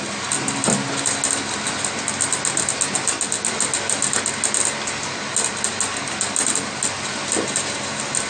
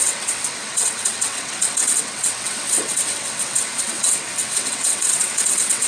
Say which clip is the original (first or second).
first